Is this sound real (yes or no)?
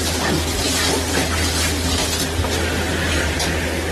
no